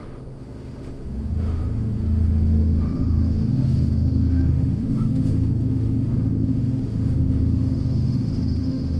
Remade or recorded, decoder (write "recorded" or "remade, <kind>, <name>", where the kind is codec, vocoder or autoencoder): remade, autoencoder, DAC-VAE